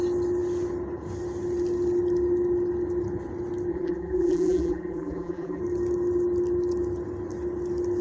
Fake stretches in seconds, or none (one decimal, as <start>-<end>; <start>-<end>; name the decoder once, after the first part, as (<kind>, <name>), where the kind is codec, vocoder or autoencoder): 3.7-5.6 (vocoder, BigVGAN v2)